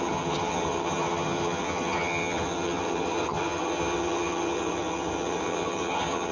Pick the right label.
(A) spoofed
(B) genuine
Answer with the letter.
A